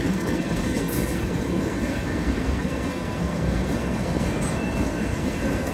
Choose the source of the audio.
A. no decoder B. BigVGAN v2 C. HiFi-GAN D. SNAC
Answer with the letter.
D